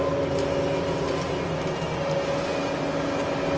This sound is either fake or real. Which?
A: real